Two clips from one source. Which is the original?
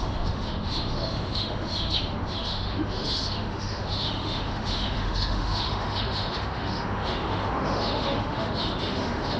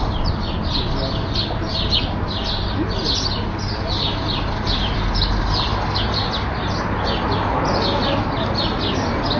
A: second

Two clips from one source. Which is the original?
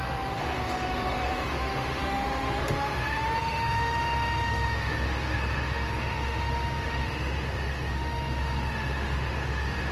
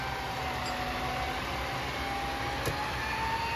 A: second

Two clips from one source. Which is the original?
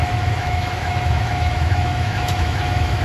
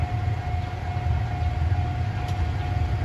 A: second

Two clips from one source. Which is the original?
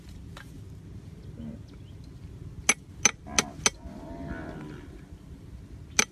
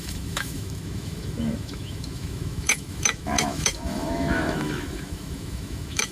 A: first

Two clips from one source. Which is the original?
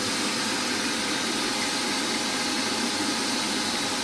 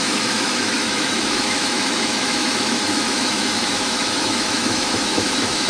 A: first